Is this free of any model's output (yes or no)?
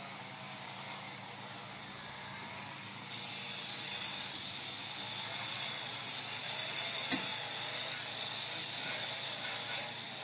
yes